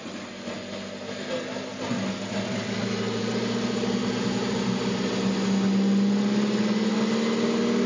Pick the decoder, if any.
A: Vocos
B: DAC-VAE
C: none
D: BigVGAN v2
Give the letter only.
C